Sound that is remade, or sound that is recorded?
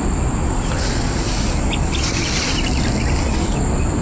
recorded